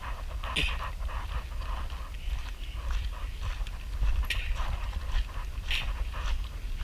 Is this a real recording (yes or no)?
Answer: yes